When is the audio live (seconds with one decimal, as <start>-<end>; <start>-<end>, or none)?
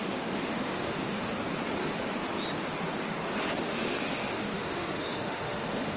1.3-3.6